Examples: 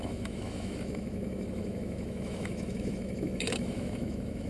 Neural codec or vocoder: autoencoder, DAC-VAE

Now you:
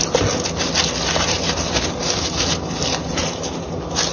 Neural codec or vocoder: none